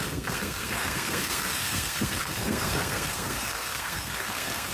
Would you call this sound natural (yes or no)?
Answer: no